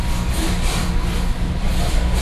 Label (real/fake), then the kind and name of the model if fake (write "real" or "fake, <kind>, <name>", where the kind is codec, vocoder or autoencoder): real